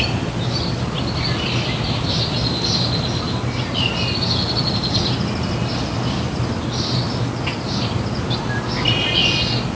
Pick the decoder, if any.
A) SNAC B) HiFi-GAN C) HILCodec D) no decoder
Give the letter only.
D